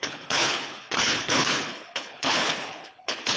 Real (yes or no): no